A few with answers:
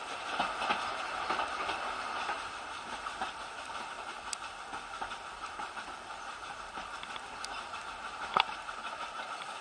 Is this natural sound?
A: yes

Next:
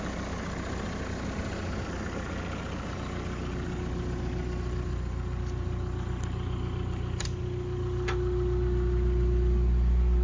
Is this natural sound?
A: yes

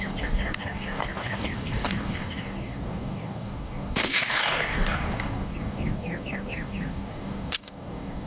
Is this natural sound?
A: no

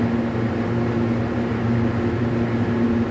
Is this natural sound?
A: yes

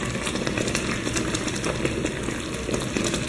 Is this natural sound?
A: yes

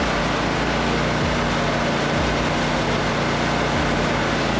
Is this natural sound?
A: yes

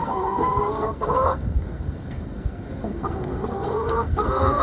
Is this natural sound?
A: no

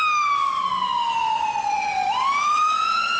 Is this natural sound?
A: yes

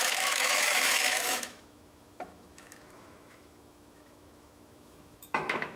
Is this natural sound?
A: no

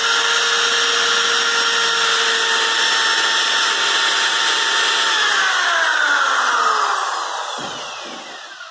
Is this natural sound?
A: yes